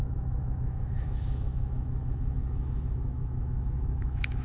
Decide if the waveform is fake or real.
fake